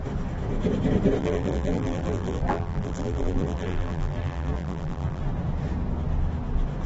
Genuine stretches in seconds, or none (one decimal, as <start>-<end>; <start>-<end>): 0.0-1.2; 5.2-6.9